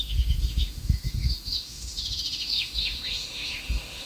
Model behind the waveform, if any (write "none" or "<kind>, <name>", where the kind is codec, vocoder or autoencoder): autoencoder, DAC-VAE